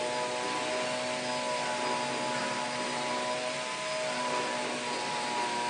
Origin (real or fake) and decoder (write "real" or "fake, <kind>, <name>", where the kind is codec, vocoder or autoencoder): real